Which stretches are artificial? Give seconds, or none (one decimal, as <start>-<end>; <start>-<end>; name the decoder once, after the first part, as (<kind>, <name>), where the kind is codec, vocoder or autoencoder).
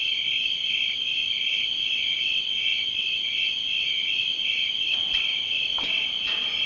1.5-5.5 (vocoder, WaveNeXt)